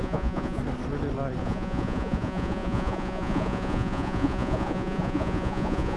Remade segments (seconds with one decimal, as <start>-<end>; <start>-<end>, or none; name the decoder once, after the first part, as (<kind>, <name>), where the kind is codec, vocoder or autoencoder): 0.0-0.6 (vocoder, Vocos); 1.4-6.0